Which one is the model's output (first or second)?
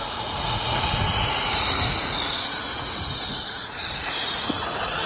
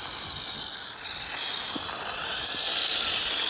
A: first